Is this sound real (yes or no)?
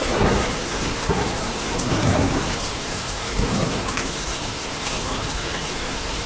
no